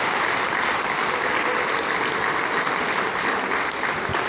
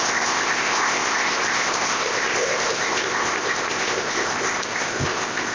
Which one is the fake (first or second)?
second